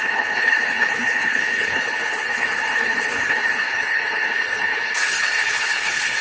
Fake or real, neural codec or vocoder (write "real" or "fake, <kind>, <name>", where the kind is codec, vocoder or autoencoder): fake, codec, HILCodec